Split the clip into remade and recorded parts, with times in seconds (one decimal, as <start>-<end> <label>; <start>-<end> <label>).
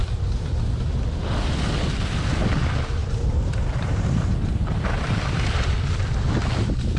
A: 0.0-3.0 recorded; 3.0-6.2 remade; 6.2-7.0 recorded